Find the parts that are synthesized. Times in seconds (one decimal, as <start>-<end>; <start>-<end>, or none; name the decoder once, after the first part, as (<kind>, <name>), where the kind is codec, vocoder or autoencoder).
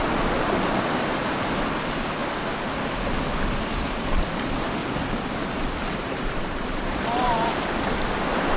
4.8-7.8 (vocoder, BigVGAN v2)